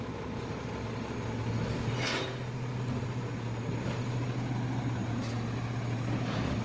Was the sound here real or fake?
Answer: real